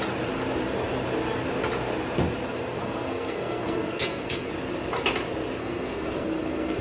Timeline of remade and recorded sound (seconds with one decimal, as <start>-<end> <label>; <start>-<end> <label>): 0.0-2.6 recorded; 2.6-4.5 remade; 4.5-5.6 recorded; 5.6-6.8 remade